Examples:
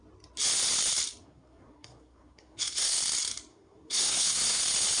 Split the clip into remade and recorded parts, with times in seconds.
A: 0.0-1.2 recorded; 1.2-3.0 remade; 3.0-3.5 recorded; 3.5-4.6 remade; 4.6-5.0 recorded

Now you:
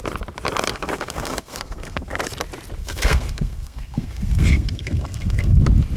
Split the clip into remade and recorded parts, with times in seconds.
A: 0.0-0.7 recorded; 0.7-2.2 remade; 2.2-2.8 recorded; 2.8-5.6 remade; 5.6-6.0 recorded

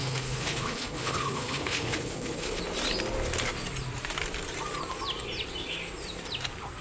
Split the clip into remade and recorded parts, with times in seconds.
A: 0.0-2.6 remade; 2.6-6.8 recorded

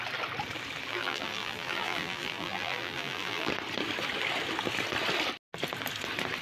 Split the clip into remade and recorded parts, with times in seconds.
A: 0.0-0.9 recorded; 0.9-3.5 remade; 3.5-6.4 recorded

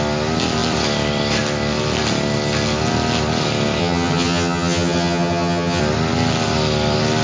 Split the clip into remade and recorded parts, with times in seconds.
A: 0.0-3.8 recorded; 3.8-5.8 remade; 5.8-7.2 recorded

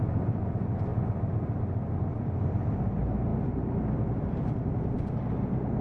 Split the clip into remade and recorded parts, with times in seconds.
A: 0.0-0.9 remade; 0.9-1.9 recorded; 1.9-3.3 remade; 3.3-5.8 recorded

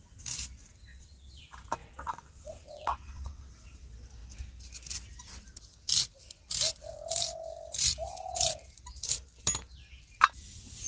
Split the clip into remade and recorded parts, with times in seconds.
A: 0.0-0.9 recorded; 0.9-1.4 remade; 1.4-1.8 recorded; 1.8-3.5 remade; 3.5-10.9 recorded

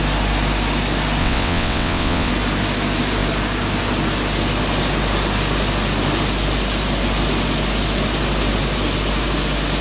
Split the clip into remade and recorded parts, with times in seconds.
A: 0.0-1.2 recorded; 1.2-2.3 remade; 2.3-9.8 recorded